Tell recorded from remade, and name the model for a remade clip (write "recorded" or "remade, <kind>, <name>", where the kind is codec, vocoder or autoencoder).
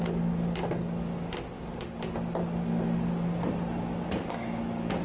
recorded